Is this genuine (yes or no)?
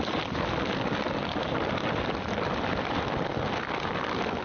yes